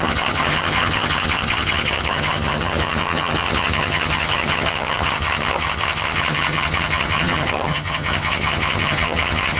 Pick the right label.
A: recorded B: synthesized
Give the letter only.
B